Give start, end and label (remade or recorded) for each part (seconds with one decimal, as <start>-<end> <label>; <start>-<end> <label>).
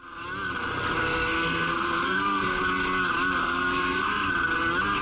0.0-1.0 recorded; 1.0-2.6 remade; 2.6-3.4 recorded; 3.4-4.3 remade; 4.3-5.0 recorded